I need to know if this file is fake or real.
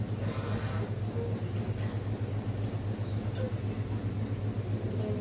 real